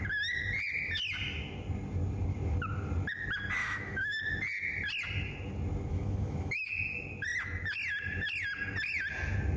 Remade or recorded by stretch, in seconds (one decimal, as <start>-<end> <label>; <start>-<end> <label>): 0.0-3.6 recorded; 3.6-4.2 remade; 4.2-5.9 recorded; 5.9-6.7 remade; 6.7-9.6 recorded